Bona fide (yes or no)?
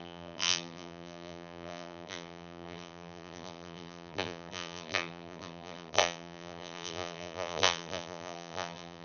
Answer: no